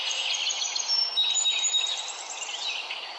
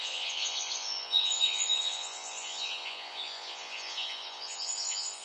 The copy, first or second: second